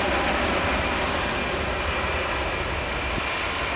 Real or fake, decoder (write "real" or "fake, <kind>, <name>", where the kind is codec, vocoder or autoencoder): real